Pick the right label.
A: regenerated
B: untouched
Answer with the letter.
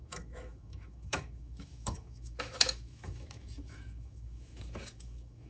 A